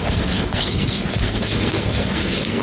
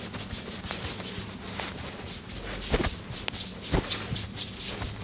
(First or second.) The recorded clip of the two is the second